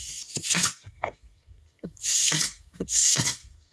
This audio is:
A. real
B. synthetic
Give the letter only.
B